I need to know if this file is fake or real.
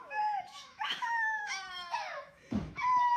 fake